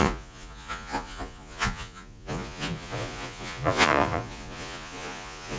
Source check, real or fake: fake